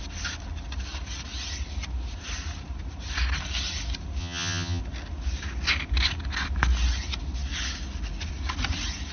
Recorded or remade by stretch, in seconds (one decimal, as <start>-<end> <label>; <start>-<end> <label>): 0.0-4.2 recorded; 4.2-4.8 remade; 4.8-9.1 recorded